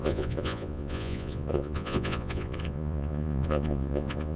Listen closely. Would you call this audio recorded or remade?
remade